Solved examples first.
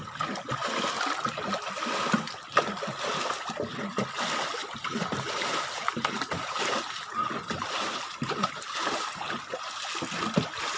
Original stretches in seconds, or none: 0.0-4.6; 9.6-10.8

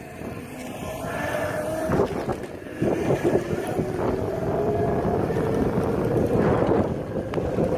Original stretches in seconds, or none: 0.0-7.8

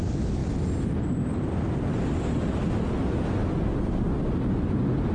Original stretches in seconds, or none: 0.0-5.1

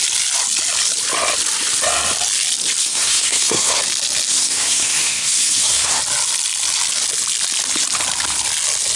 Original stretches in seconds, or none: 0.0-2.8; 3.8-4.3; 6.0-9.0